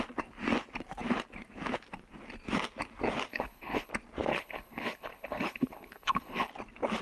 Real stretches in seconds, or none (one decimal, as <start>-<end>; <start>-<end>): 0.0-3.3; 3.9-4.3; 6.5-7.0